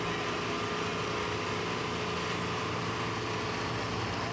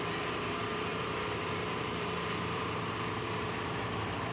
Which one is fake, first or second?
second